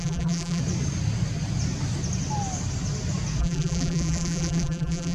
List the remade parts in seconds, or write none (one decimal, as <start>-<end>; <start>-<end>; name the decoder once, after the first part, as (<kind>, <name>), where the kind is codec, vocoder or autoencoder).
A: 0.0-0.6 (vocoder, BigVGAN v2); 3.4-5.1